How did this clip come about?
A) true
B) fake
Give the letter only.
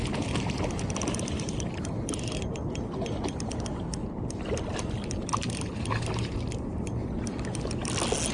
A